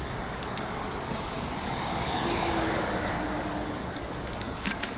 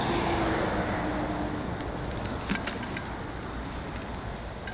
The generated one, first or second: first